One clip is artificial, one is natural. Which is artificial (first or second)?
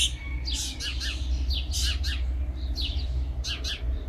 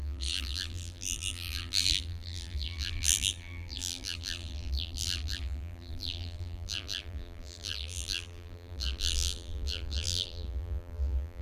second